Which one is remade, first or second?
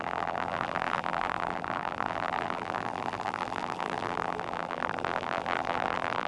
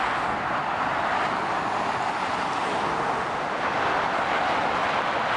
first